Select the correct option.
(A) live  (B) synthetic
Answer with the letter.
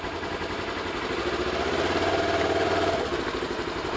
A